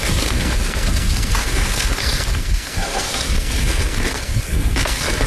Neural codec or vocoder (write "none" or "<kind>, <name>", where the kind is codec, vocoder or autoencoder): codec, SNAC